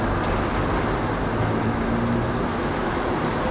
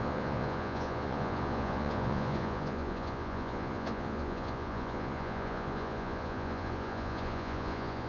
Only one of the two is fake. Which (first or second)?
second